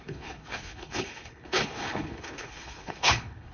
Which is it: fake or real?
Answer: fake